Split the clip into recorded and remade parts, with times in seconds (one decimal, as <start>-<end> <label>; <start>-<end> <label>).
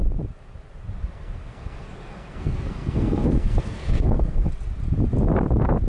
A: 0.0-1.0 recorded; 1.0-4.5 remade; 4.5-5.9 recorded